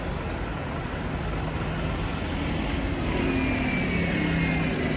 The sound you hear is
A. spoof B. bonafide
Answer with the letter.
B